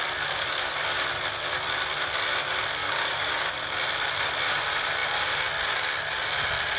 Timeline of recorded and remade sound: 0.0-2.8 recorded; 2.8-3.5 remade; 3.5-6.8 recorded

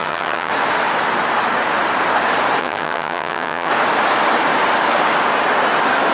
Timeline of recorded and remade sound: 0.0-0.5 remade; 0.5-2.6 recorded; 2.6-3.7 remade; 3.7-6.1 recorded

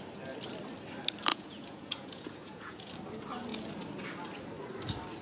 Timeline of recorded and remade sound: 0.0-1.3 recorded; 1.3-2.9 remade; 2.9-5.2 recorded

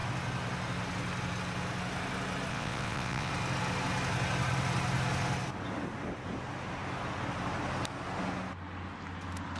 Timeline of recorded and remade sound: 0.0-2.5 recorded; 2.5-3.3 remade; 3.3-9.6 recorded

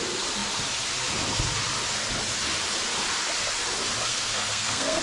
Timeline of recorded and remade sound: 0.0-4.1 recorded; 4.1-5.0 remade

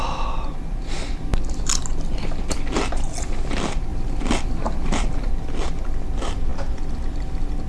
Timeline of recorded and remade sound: 0.0-3.9 recorded; 3.9-5.3 remade; 5.3-7.7 recorded

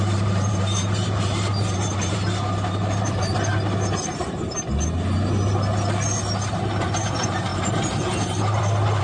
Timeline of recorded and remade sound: 0.0-3.3 remade; 3.3-6.5 recorded; 6.5-9.0 remade

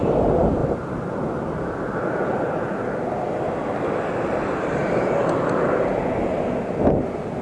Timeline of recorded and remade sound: 0.0-7.4 recorded